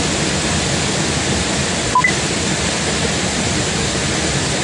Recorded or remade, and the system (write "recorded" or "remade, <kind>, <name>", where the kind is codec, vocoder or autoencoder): recorded